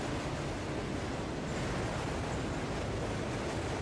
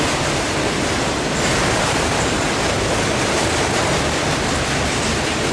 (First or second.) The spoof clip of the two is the second